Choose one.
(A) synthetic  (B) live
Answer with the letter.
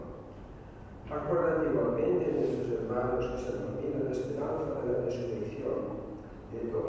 B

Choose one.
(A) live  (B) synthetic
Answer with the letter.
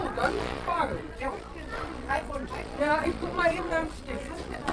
B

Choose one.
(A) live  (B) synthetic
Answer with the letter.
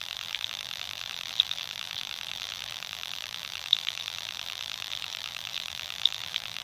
B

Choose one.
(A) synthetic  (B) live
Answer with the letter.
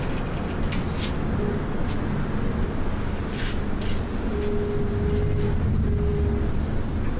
B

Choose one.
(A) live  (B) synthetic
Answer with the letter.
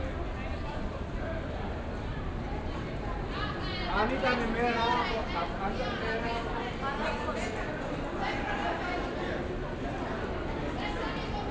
A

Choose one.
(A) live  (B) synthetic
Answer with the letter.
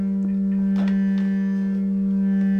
A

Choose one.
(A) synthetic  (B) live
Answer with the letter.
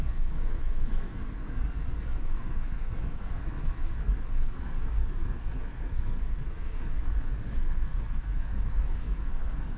A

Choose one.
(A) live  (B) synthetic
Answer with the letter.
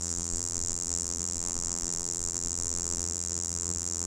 B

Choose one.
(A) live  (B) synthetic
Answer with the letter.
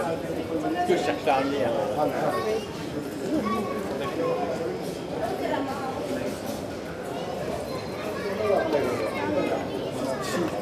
A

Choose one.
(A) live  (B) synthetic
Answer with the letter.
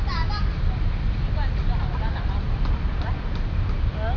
A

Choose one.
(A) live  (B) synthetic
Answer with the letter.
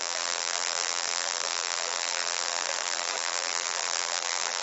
B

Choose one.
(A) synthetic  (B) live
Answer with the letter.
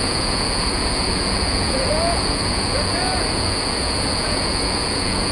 A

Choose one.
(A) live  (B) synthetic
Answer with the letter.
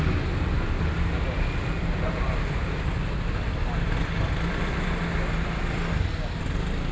A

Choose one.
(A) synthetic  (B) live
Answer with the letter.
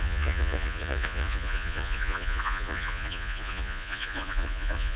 A